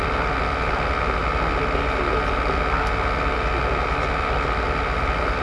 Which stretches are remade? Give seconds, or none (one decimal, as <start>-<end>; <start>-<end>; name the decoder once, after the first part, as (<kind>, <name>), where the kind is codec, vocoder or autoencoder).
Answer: none

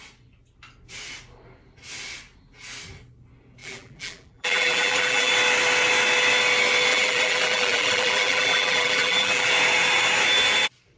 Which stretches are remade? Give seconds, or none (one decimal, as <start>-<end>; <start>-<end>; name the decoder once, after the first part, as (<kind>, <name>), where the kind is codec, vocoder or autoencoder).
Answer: 3.6-5.3 (vocoder, BigVGAN v2); 6.9-9.5

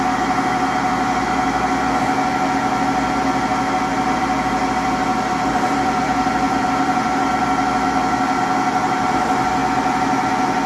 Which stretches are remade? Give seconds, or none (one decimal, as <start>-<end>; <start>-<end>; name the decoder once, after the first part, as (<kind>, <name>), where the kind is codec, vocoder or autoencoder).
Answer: 3.9-7.2 (vocoder, BigVGAN v2)

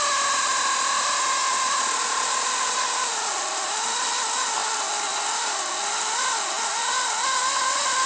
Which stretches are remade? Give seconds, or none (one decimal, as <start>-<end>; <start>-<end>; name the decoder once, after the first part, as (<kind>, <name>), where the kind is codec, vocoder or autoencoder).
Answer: none

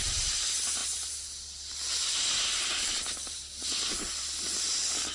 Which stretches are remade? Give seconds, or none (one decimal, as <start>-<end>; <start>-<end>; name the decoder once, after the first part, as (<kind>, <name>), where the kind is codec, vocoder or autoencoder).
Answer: none

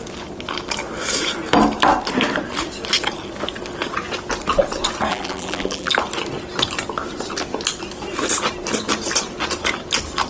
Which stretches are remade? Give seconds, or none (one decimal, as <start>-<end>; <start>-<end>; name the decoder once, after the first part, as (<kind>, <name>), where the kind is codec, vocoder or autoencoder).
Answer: 5.1-5.9 (vocoder, BigVGAN v2)